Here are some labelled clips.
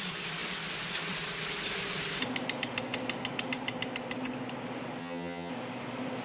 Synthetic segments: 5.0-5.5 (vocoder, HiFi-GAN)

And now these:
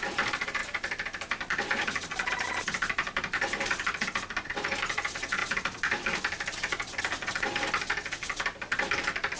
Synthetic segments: none

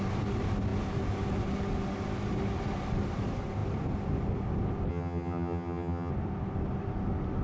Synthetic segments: 4.9-6.1 (vocoder, HiFi-GAN)